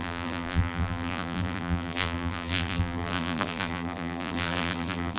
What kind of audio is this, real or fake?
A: fake